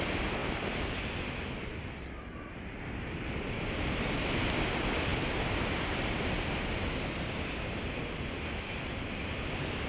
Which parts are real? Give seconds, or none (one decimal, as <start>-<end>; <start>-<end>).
0.0-9.9